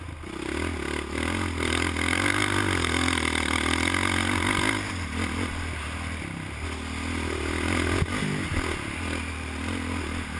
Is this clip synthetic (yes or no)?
no